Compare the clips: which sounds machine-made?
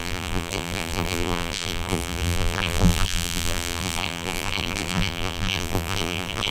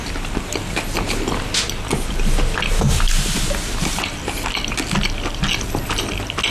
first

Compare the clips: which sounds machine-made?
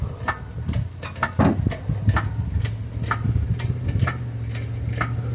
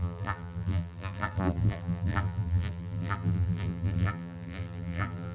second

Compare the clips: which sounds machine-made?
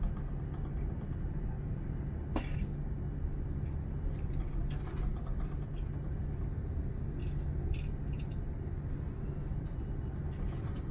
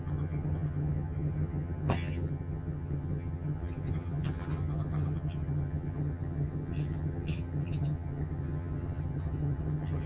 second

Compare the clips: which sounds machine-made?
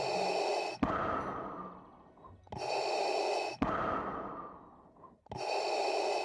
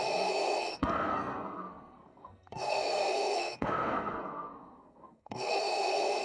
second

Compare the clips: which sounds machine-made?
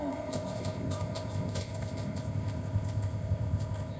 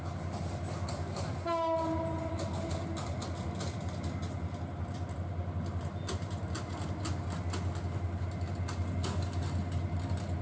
first